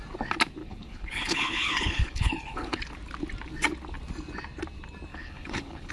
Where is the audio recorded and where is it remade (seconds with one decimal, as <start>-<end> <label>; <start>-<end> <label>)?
0.0-0.6 recorded; 0.6-2.8 remade; 2.8-5.1 recorded; 5.1-5.9 remade